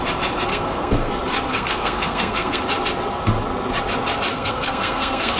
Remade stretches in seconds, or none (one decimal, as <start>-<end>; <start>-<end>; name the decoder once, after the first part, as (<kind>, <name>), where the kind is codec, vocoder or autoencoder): 0.5-1.1 (codec, SNAC); 1.5-2.6; 4.3-5.4